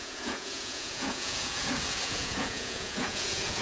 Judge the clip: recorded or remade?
remade